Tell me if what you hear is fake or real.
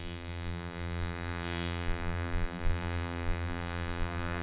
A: fake